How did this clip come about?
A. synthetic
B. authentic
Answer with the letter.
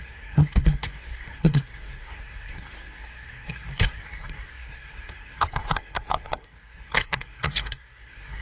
A